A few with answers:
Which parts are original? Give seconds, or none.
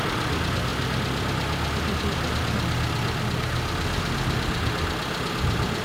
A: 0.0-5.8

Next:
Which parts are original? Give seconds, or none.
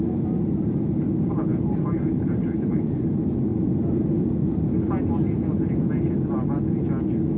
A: 0.0-1.5; 3.0-7.4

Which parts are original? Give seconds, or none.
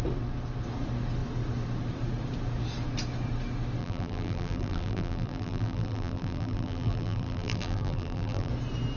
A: 0.0-3.8; 8.5-9.0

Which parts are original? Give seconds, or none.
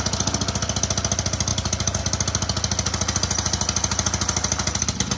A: 0.0-1.5; 2.0-5.2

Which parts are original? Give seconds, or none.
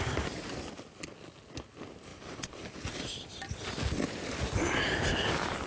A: 0.0-2.1; 3.6-5.7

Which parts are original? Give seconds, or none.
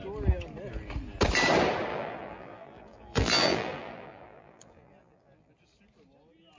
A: 0.0-1.9; 5.5-6.6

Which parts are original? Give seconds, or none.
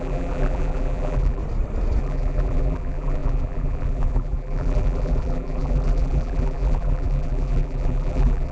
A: 1.4-2.0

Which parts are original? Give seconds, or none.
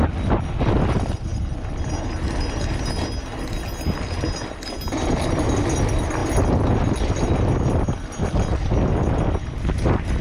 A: 0.0-10.2